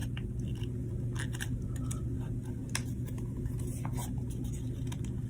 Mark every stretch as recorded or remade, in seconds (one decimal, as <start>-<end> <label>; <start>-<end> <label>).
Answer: 0.0-4.0 recorded; 4.0-4.5 remade; 4.5-5.3 recorded